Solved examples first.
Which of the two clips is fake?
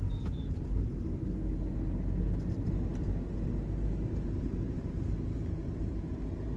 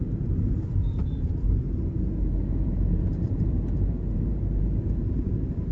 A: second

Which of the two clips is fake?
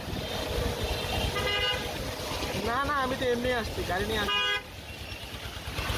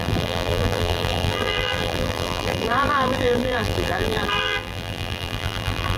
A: second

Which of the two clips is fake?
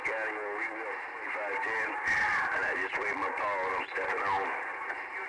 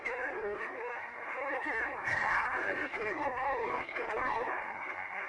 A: second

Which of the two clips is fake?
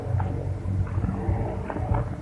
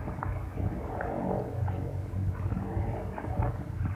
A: second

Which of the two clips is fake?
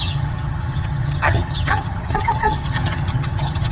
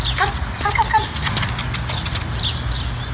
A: first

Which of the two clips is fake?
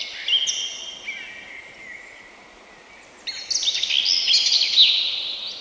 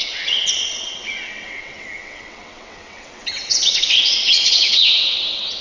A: second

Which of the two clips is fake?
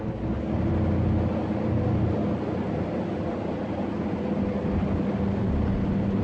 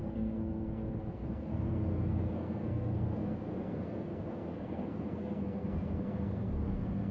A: second